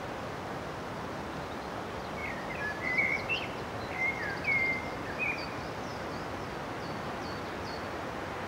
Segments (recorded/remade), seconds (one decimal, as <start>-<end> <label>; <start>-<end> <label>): 0.0-8.5 recorded